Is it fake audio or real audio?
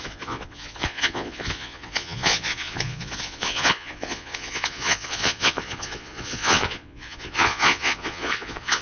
fake